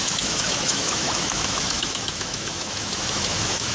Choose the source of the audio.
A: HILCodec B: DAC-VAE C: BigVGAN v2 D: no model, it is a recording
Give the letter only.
B